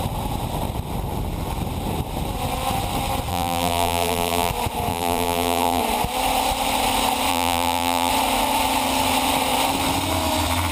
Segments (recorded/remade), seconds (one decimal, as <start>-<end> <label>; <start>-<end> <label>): 0.0-3.3 recorded; 3.3-4.5 remade; 4.5-4.9 recorded; 4.9-5.8 remade; 5.8-7.3 recorded; 7.3-8.1 remade; 8.1-10.7 recorded